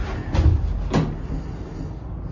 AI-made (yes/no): no